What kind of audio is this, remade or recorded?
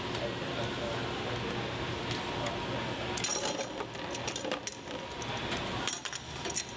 recorded